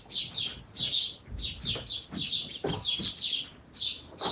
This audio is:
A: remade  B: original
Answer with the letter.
B